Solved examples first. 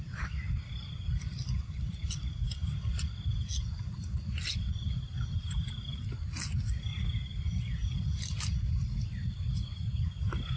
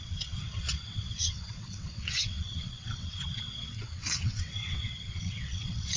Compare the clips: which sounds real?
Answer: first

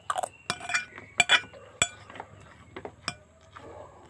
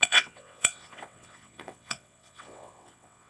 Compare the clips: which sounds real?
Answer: first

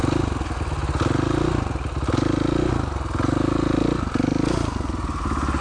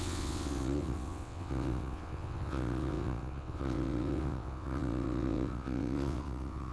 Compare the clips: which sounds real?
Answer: first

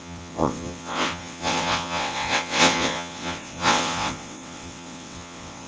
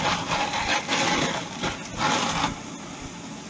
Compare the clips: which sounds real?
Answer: second